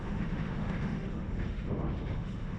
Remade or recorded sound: remade